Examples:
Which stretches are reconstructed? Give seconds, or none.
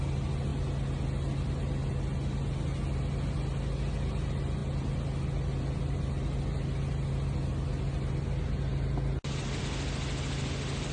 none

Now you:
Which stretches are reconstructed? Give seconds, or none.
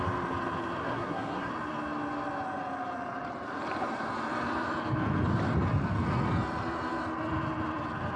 0.8-1.5 (codec, SNAC)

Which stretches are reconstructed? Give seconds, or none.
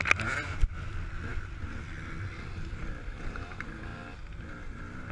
none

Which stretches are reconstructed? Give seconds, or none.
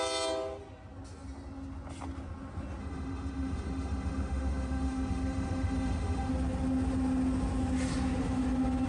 2.8-6.3 (autoencoder, DAC-VAE)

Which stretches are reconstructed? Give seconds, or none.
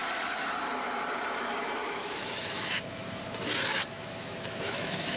1.8-3.2 (autoencoder, DAC-VAE); 3.7-5.2